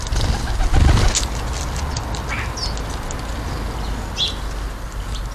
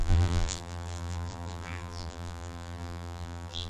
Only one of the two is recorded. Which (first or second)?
first